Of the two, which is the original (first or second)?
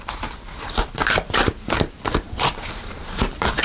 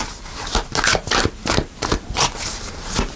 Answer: second